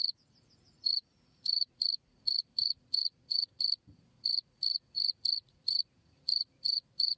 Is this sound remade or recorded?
remade